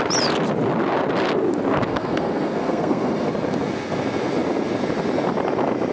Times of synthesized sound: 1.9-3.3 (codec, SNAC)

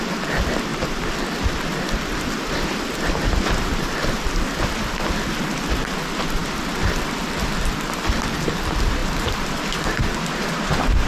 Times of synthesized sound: 0.0-11.1 (vocoder, BigVGAN v2)

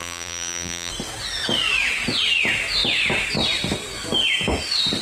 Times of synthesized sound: 0.0-0.9 (vocoder, BigVGAN v2)

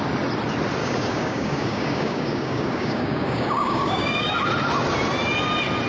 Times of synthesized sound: 0.8-4.3 (codec, DAC)

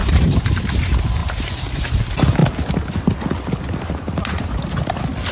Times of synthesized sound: 0.0-0.5 (vocoder, BigVGAN v2); 1.2-2.0

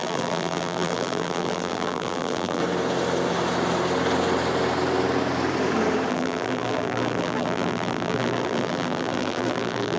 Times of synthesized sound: 0.0-2.6 (vocoder, BigVGAN v2); 6.1-10.0

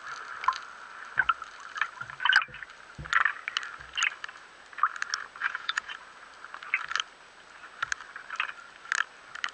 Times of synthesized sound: 5.4-5.9 (vocoder, Vocos)

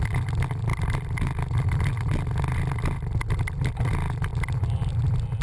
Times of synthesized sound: none